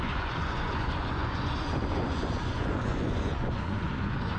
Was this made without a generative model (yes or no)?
no